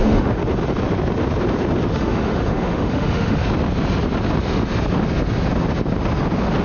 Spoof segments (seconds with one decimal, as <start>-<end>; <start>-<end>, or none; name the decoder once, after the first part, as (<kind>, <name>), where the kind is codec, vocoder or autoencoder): 0.0-0.4 (autoencoder, DAC-VAE); 1.9-3.4